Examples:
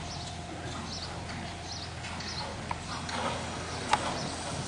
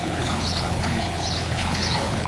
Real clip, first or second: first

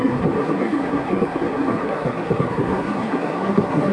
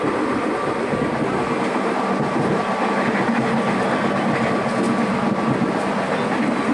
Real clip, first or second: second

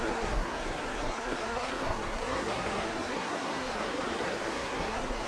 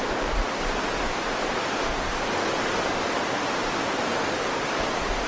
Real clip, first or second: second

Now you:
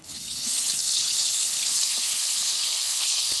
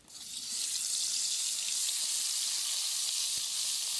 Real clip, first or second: second